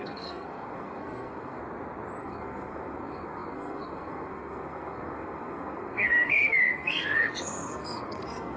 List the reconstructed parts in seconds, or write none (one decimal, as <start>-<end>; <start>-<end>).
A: 0.0-1.6; 2.2-8.6